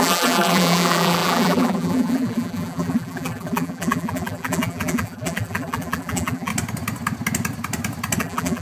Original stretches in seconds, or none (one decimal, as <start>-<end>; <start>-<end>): 6.5-8.2